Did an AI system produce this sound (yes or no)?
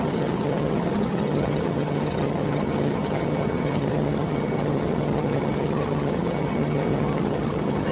yes